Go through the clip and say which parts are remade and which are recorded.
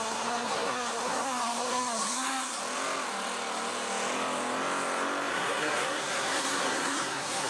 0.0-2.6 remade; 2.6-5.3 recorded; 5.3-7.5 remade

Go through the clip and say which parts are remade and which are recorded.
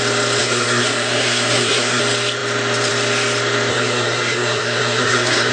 0.0-0.4 recorded; 0.4-2.0 remade; 2.0-3.7 recorded; 3.7-5.5 remade